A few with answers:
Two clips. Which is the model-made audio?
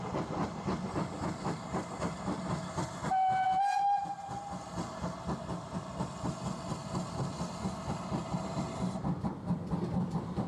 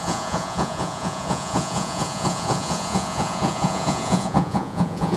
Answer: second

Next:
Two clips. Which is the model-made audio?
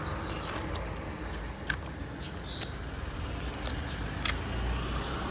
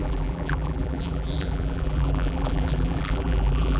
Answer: second